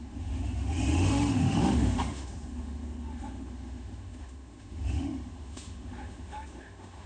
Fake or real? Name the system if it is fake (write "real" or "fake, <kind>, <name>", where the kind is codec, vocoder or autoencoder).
fake, autoencoder, DAC-VAE